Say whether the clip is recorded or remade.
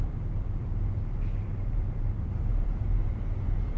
remade